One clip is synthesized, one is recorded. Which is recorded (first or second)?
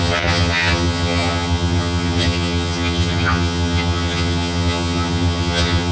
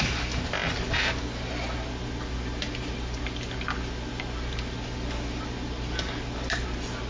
second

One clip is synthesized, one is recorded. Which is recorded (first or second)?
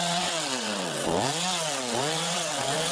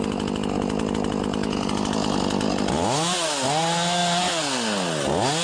second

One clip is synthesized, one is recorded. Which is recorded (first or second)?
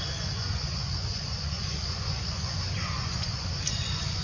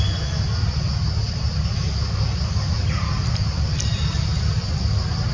second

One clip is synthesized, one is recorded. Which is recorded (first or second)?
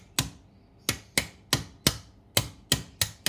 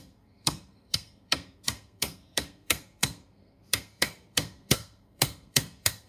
first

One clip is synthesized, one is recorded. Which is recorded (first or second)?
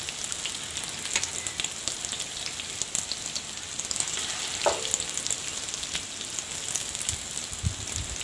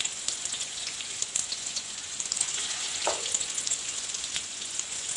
first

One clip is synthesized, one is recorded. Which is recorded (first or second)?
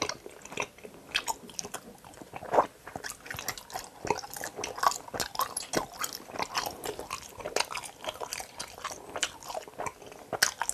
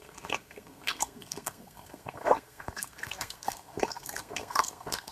first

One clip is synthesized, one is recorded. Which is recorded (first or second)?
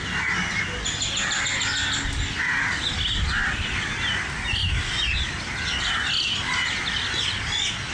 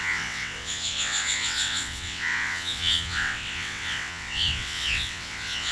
first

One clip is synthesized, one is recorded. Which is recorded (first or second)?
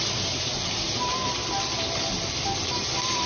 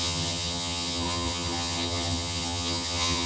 first